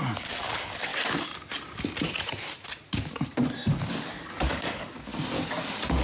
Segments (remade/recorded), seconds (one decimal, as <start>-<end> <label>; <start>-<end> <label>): 0.0-0.9 remade; 0.9-4.5 recorded; 4.5-5.1 remade; 5.1-6.0 recorded